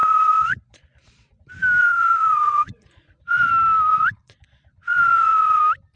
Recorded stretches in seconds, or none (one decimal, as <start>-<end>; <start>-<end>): 1.4-1.8; 3.5-3.9; 5.6-6.0